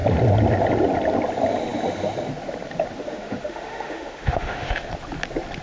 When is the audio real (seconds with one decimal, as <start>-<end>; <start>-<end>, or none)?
0.0-3.0; 4.9-5.6